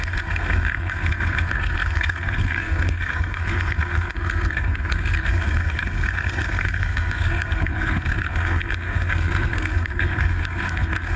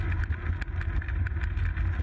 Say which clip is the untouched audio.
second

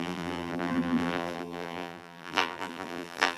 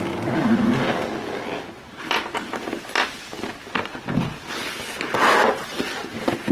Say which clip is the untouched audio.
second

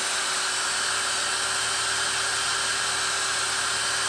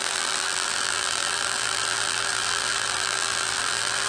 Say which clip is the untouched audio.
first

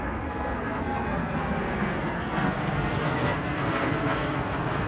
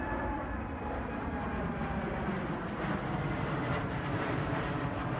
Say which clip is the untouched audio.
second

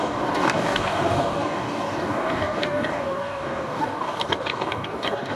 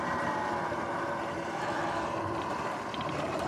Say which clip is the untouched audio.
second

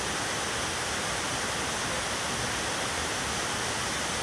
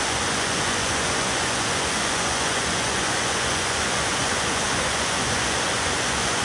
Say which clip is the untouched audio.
first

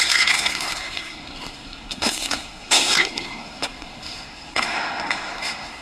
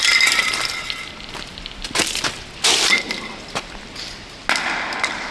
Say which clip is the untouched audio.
second